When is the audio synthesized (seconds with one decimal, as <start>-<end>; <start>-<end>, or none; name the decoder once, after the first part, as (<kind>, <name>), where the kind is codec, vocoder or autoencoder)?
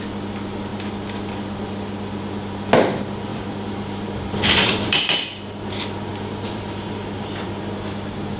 3.3-5.4 (vocoder, BigVGAN v2); 6.1-7.5